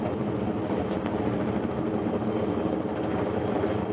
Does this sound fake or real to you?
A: real